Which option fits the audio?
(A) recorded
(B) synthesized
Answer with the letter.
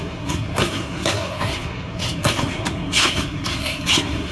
B